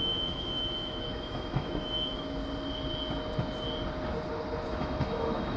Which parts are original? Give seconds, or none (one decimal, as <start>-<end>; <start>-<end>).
2.4-4.7